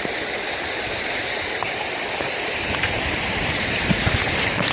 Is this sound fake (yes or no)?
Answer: yes